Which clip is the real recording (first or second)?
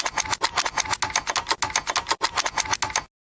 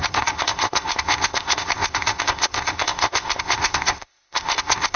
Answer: first